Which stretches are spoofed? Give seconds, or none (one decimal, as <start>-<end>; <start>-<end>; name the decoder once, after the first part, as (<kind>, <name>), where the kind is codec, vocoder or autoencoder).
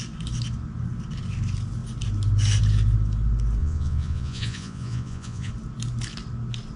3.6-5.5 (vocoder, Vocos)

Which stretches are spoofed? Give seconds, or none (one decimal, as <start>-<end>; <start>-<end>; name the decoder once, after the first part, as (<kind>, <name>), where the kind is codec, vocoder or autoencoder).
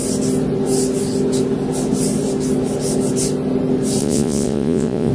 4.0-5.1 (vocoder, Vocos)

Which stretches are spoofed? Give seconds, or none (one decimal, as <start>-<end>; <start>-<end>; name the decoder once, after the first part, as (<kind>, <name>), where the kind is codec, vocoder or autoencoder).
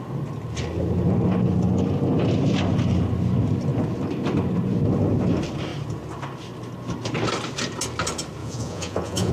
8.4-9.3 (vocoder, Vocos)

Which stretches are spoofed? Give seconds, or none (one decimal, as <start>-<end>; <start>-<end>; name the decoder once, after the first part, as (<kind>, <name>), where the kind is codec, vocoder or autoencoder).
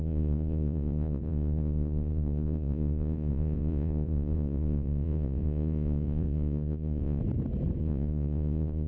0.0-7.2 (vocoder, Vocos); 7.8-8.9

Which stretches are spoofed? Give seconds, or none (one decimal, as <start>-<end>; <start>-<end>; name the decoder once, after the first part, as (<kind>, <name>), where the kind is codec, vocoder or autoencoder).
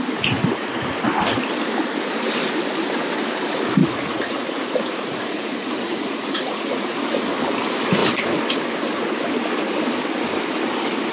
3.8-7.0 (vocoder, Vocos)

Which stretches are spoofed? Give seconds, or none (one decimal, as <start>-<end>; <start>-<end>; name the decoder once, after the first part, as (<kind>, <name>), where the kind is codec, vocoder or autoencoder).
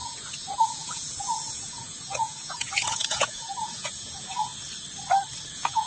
0.0-4.5 (vocoder, Vocos); 5.5-5.9